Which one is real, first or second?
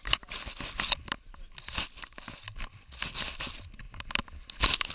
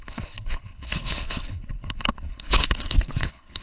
first